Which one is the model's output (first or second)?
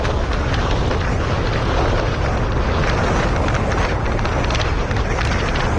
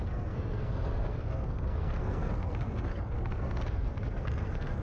second